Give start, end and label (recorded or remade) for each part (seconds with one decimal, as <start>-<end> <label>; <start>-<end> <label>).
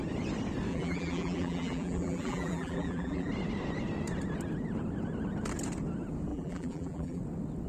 0.0-0.7 recorded; 0.7-3.3 remade; 3.3-6.3 recorded; 6.3-7.2 remade; 7.2-7.7 recorded